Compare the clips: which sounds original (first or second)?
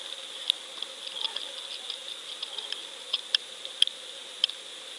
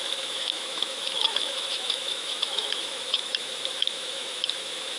first